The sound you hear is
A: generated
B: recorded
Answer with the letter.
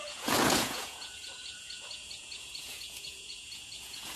A